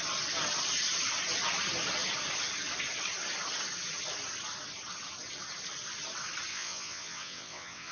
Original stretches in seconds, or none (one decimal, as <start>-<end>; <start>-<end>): 0.0-6.5